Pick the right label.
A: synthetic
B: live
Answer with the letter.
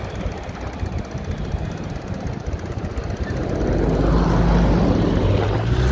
B